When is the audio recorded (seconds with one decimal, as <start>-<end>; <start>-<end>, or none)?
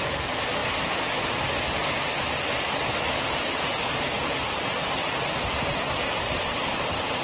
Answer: 0.0-7.2